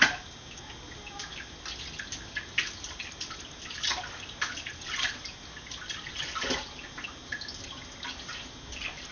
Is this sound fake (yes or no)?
no